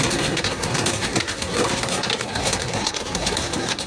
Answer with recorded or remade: remade